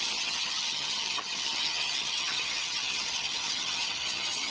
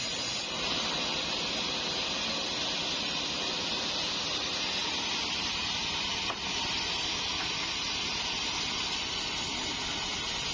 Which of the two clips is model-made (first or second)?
first